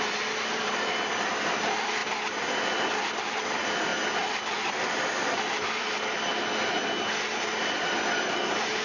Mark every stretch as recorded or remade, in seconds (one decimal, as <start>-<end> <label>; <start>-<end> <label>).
0.0-2.0 remade; 2.0-3.0 recorded; 3.0-3.9 remade; 3.9-4.5 recorded; 4.5-6.3 remade; 6.3-7.6 recorded; 7.6-8.8 remade